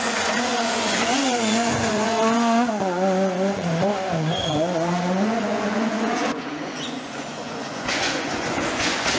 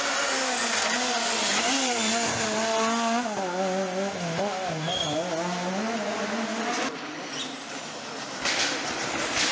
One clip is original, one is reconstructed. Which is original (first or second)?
second